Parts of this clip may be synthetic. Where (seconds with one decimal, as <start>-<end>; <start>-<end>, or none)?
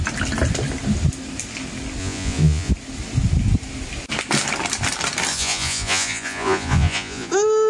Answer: 2.0-2.7; 5.3-7.3